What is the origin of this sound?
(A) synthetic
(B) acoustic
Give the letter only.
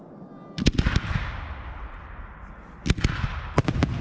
B